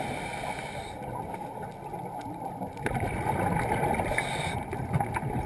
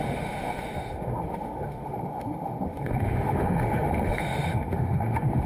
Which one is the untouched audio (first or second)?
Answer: first